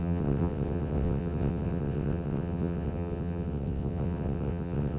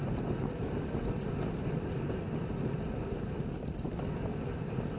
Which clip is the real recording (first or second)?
second